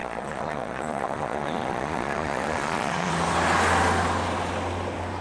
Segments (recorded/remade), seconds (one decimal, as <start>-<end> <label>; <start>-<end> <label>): 0.0-3.1 remade; 3.1-5.2 recorded